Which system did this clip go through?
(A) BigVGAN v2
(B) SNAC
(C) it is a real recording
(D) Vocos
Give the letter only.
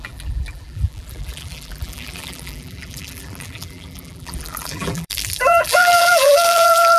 A